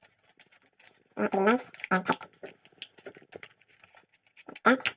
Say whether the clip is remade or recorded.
recorded